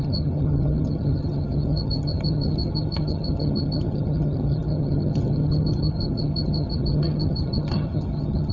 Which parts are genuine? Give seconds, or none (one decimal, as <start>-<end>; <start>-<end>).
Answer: none